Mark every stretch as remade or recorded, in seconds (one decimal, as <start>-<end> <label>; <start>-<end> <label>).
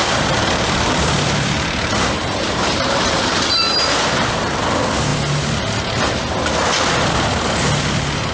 0.0-4.5 remade; 4.5-8.3 recorded